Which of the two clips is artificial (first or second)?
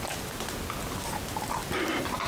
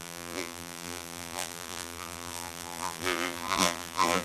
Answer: second